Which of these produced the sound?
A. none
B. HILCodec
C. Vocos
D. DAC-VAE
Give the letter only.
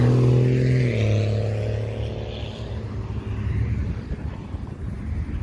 A